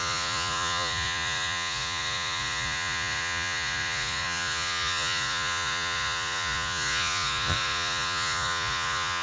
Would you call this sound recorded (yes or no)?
no